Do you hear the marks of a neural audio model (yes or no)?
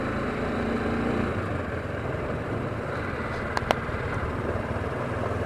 yes